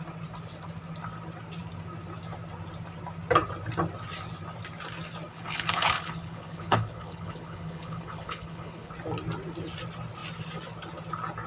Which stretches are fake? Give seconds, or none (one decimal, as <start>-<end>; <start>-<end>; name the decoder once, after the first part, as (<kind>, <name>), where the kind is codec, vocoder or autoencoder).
5.3-8.9 (codec, HILCodec)